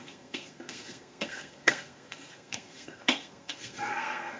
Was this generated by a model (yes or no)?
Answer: yes